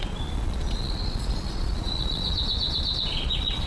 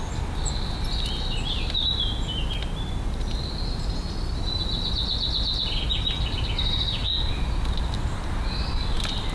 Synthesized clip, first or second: first